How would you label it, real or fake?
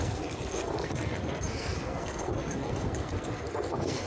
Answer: fake